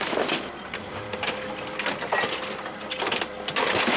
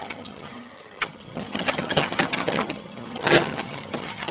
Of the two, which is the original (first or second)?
first